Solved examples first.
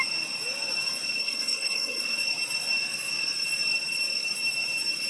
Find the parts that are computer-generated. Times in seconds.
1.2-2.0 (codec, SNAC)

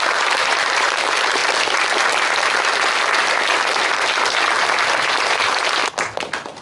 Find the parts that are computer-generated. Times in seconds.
0.0-1.4 (vocoder, BigVGAN v2); 5.1-5.8

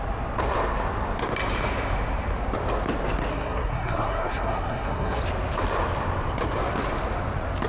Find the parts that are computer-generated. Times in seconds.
3.3-5.2 (codec, SNAC)

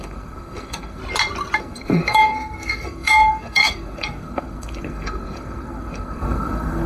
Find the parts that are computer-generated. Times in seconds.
0.0-1.0 (codec, SNAC); 1.6-6.9

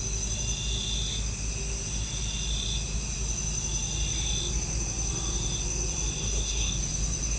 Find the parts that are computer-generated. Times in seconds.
6.2-6.8 (codec, SNAC)

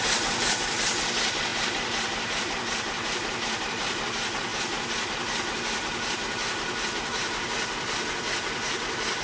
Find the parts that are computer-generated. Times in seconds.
none

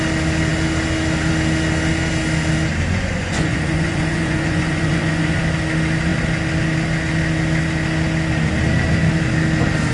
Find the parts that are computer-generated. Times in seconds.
2.9-5.4 (vocoder, Vocos)